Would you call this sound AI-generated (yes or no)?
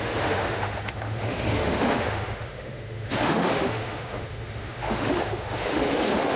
yes